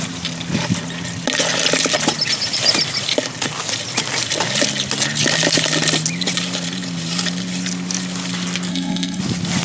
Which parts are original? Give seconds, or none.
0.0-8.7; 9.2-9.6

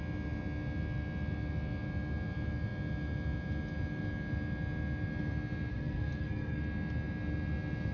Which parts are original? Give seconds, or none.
0.0-5.7; 6.6-7.9

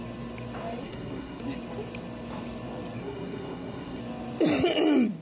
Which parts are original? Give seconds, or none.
0.0-0.8; 1.4-3.0; 4.0-5.2